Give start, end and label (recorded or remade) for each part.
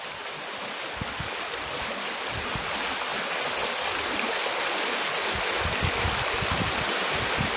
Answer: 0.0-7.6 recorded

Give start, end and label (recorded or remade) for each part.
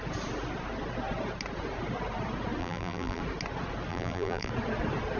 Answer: 0.0-2.6 recorded; 2.6-3.2 remade; 3.2-3.9 recorded; 3.9-4.5 remade; 4.5-5.2 recorded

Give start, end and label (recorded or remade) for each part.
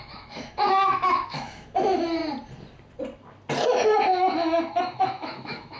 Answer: 0.0-2.2 remade; 2.2-4.8 recorded; 4.8-5.8 remade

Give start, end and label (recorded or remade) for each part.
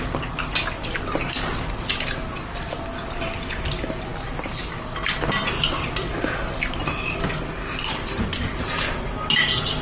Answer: 0.0-9.8 recorded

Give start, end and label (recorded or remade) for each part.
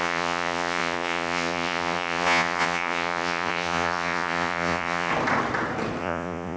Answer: 0.0-5.1 remade; 5.1-6.0 recorded; 6.0-6.6 remade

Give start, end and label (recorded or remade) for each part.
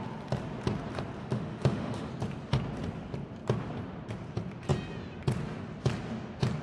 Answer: 0.0-1.2 recorded; 1.2-2.1 remade; 2.1-6.6 recorded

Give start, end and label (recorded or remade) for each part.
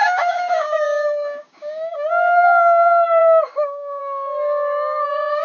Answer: 0.0-5.4 remade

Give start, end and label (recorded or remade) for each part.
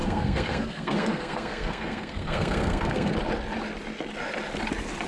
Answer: 0.0-3.1 remade; 3.1-5.1 recorded